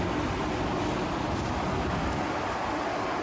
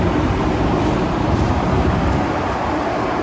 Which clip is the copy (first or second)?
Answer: second